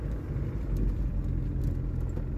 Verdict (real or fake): real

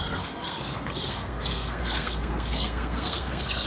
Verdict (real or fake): fake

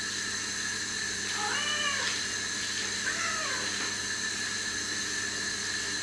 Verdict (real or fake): real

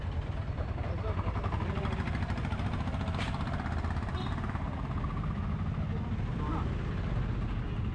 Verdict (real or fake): real